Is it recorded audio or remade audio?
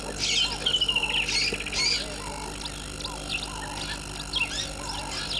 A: recorded